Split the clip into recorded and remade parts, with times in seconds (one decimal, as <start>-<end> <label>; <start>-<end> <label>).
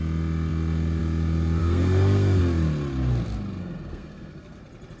0.0-1.6 recorded; 1.6-2.4 remade; 2.4-3.6 recorded; 3.6-4.6 remade; 4.6-5.0 recorded